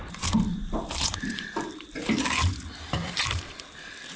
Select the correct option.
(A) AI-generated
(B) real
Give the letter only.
B